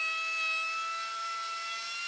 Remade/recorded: recorded